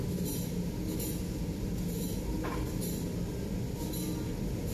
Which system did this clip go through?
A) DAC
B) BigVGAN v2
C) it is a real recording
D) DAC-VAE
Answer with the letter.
C